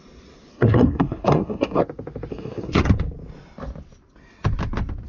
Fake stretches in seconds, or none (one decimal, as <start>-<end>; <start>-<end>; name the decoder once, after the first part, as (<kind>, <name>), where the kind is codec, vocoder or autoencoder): 0.5-1.8 (codec, SNAC); 2.3-2.8